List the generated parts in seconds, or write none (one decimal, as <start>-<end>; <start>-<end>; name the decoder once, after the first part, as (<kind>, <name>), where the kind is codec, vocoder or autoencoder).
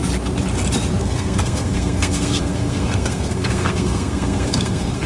1.0-5.1 (codec, SNAC)